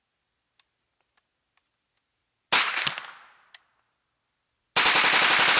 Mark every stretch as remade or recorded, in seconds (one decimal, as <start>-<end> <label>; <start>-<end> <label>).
0.0-5.6 recorded